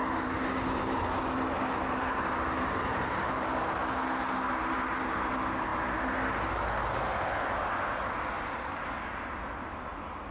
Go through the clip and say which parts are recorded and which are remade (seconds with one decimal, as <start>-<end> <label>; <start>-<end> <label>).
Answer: 0.0-10.3 recorded